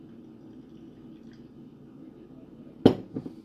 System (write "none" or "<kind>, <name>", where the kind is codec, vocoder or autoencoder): none